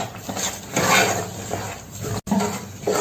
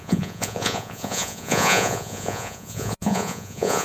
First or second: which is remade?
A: second